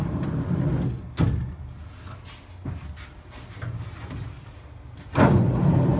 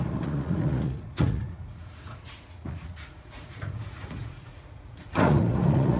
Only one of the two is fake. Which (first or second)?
second